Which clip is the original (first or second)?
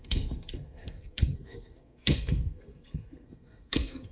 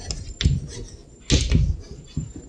second